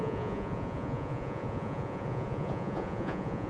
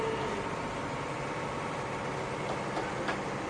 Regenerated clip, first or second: first